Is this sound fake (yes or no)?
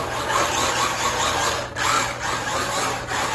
no